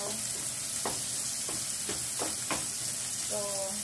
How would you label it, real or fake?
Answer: real